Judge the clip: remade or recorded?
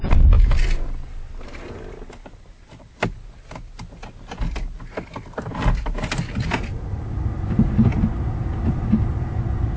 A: recorded